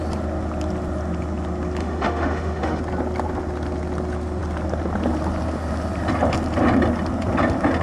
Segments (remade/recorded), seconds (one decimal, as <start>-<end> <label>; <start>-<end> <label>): 0.0-1.8 recorded; 1.8-2.8 remade; 2.8-7.8 recorded